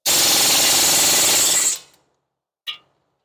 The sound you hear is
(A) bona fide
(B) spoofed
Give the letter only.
A